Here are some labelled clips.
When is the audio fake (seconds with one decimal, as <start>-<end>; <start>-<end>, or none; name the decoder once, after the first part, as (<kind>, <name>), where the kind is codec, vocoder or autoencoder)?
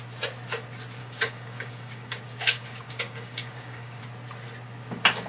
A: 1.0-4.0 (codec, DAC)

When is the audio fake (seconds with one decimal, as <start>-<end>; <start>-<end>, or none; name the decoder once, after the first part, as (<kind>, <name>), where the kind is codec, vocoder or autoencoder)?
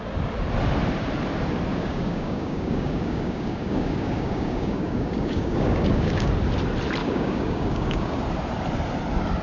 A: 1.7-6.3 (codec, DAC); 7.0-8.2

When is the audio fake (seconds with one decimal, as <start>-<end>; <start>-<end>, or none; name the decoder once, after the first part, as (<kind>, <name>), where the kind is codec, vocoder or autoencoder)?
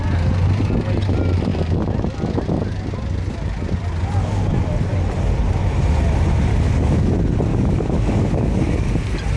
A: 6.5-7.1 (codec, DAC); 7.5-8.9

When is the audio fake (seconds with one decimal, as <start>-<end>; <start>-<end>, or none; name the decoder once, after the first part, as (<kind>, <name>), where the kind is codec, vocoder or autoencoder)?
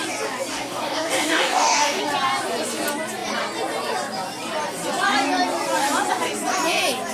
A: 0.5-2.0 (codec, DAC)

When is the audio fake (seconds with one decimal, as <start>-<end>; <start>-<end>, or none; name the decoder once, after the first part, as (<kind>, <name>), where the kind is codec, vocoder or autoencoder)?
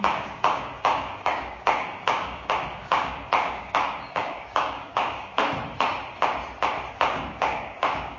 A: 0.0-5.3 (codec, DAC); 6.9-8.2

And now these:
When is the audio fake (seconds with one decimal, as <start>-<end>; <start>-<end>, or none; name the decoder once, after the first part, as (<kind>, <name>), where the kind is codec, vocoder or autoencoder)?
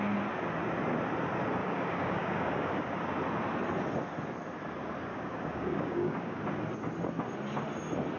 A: 1.6-2.8 (codec, DAC); 5.1-6.4